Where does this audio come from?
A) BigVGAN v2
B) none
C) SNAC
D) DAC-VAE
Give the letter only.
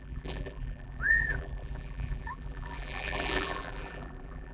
A